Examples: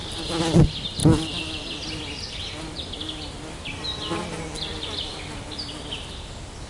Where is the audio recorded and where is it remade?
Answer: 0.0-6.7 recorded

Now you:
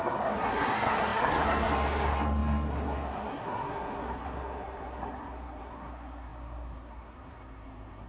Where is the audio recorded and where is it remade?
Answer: 0.0-8.1 remade

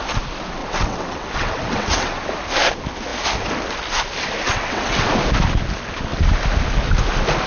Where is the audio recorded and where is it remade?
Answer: 0.0-0.6 recorded; 0.6-2.2 remade; 2.2-4.4 recorded; 4.4-5.1 remade; 5.1-7.5 recorded

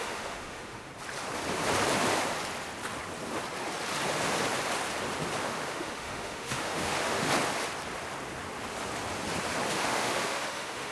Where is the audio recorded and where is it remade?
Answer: 0.0-0.9 remade; 0.9-5.4 recorded; 5.4-7.3 remade; 7.3-9.7 recorded; 9.7-10.9 remade

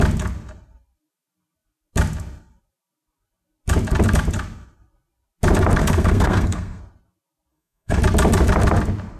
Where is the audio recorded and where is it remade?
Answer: 0.0-5.8 recorded; 5.8-6.8 remade; 6.8-7.5 recorded; 7.5-8.0 remade; 8.0-9.2 recorded

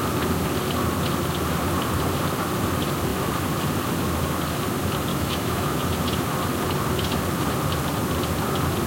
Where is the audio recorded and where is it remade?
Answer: 0.0-5.1 recorded; 5.1-5.9 remade; 5.9-8.9 recorded

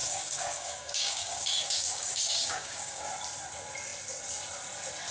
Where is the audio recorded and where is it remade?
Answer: 0.0-3.1 remade; 3.1-5.1 recorded

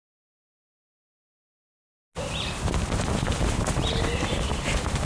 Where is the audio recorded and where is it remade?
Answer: 0.0-5.0 recorded